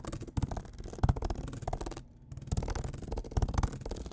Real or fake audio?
real